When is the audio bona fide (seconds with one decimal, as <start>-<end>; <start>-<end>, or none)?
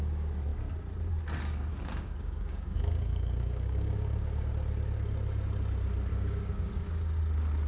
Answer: 0.0-1.7; 4.5-6.1; 7.2-7.7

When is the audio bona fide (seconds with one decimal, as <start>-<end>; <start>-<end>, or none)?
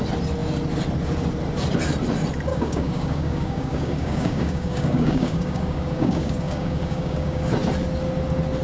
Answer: 0.0-2.5; 7.4-8.6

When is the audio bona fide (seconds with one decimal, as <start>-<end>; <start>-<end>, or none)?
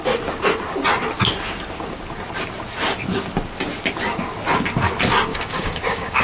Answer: 0.0-5.3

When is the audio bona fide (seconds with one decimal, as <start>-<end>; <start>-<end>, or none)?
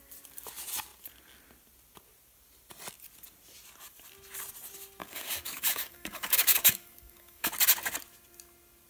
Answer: 0.0-5.0; 7.5-8.9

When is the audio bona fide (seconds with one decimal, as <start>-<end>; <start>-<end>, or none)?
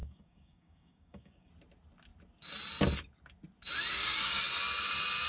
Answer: 1.5-3.9; 4.4-5.3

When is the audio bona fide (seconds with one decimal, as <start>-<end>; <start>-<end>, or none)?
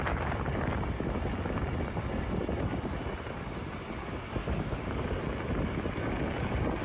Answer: 0.0-4.4; 5.0-6.8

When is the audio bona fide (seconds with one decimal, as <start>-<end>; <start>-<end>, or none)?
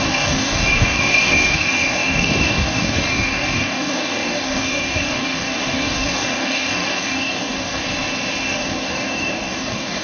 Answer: 7.8-8.4